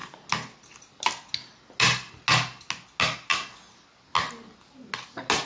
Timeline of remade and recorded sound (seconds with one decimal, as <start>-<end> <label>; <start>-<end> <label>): 0.0-5.5 recorded